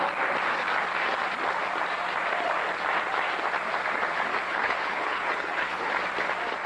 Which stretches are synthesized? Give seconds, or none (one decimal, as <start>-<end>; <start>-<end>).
4.3-5.9